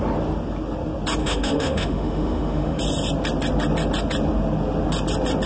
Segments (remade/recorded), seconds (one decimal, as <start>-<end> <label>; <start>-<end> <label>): 0.0-1.2 recorded; 1.2-2.8 remade; 2.8-5.5 recorded